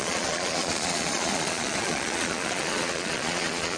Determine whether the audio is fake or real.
fake